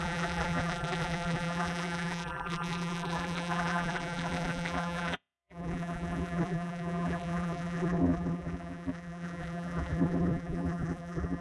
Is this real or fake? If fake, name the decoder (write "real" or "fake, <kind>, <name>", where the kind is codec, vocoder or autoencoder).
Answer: fake, vocoder, BigVGAN v2